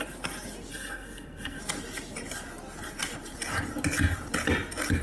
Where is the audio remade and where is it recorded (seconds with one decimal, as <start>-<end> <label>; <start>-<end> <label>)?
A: 0.0-0.7 recorded; 0.7-1.6 remade; 1.6-5.0 recorded